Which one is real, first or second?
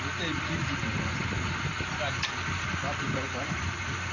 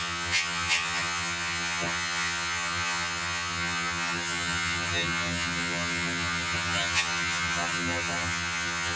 first